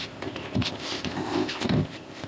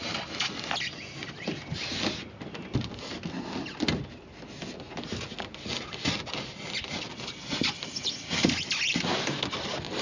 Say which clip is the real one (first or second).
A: second